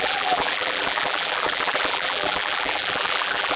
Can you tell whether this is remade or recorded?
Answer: remade